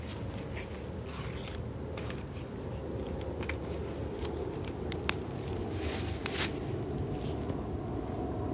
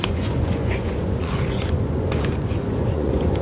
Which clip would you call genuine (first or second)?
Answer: first